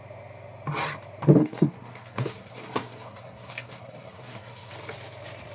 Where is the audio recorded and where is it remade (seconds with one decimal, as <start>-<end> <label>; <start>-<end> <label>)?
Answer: 0.0-1.4 recorded; 1.4-4.7 remade; 4.7-5.5 recorded